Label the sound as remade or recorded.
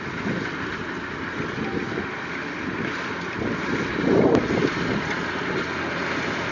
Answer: recorded